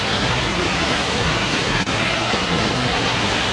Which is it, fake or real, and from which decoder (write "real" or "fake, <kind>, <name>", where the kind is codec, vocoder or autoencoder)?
fake, codec, SNAC